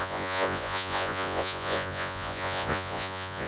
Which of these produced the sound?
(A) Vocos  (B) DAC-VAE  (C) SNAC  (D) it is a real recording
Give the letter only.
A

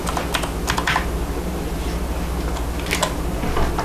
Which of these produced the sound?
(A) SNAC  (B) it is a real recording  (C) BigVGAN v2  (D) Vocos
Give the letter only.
B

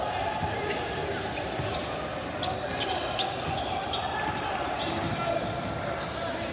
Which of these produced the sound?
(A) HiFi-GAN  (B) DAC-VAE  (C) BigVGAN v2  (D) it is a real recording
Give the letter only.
D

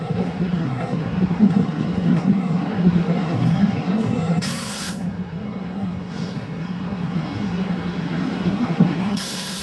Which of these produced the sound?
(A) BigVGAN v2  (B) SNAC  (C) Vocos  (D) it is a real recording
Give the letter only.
B